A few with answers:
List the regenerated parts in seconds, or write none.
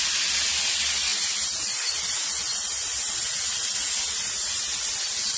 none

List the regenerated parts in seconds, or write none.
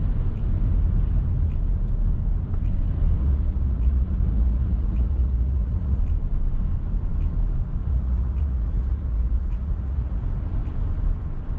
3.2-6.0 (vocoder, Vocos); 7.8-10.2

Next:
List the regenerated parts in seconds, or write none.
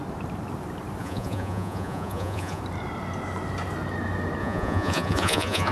1.0-2.6 (vocoder, Vocos); 4.4-5.7